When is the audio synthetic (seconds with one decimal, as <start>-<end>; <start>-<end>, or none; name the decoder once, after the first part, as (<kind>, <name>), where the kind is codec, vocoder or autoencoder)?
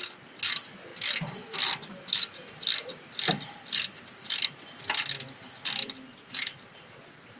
0.9-4.5 (vocoder, BigVGAN v2)